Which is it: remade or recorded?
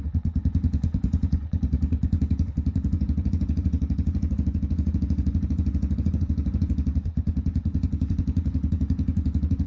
remade